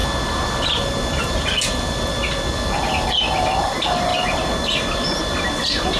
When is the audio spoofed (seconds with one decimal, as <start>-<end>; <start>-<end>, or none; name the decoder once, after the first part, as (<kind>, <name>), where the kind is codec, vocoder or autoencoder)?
none